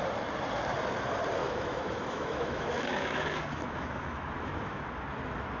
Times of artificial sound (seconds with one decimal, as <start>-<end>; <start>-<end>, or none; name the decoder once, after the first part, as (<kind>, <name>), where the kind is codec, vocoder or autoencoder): 1.4-4.8 (autoencoder, DAC-VAE)